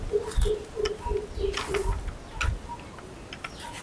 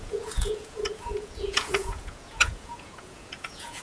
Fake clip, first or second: second